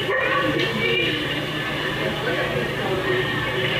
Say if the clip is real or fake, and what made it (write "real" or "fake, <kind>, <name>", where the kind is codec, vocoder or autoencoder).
real